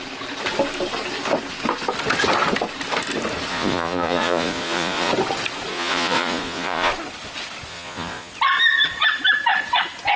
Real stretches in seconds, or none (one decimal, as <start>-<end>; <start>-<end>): 0.0-3.5; 5.1-5.7; 6.9-7.7; 8.3-10.2

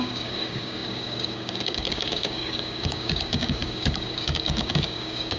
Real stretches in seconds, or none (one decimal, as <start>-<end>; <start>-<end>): none

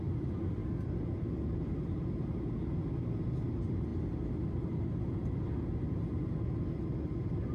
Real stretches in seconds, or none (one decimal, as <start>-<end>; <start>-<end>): 0.0-7.5

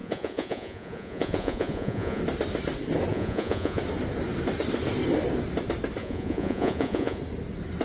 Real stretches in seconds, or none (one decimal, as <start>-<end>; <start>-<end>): 2.2-3.1; 3.8-6.0; 7.2-7.8